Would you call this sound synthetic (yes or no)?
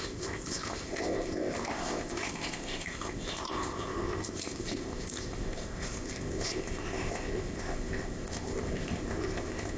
yes